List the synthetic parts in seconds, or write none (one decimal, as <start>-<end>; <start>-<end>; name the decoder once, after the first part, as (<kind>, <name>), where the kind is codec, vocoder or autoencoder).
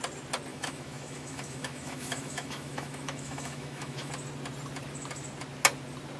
0.5-4.1 (autoencoder, DAC-VAE)